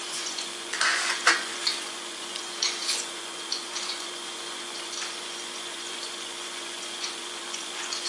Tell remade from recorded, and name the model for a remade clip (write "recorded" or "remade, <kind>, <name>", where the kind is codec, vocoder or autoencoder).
remade, vocoder, Vocos